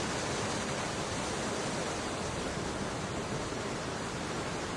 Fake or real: fake